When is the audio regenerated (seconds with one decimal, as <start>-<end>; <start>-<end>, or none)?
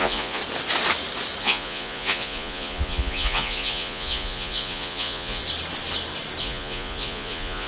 0.0-0.4; 1.4-5.4; 6.4-7.7